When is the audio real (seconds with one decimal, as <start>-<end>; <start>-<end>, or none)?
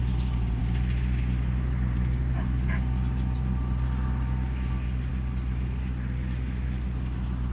0.0-7.5